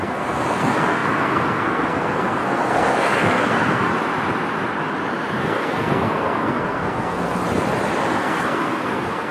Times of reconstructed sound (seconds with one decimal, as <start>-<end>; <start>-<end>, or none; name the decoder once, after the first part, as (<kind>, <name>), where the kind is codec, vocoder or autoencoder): 0.0-3.9 (codec, SNAC); 5.4-7.4; 8.1-9.3